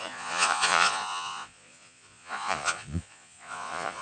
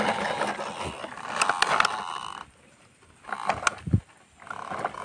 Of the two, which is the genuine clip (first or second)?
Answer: second